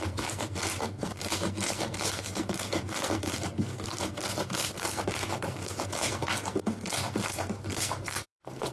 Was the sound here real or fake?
fake